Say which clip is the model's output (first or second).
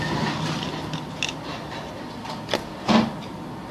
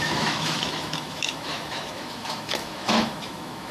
second